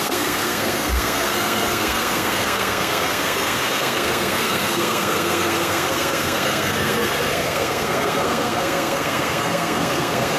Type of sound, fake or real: fake